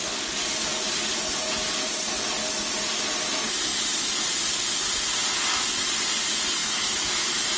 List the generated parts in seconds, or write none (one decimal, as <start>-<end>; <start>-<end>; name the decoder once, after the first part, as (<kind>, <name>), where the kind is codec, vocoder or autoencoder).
6.6-7.6 (autoencoder, DAC-VAE)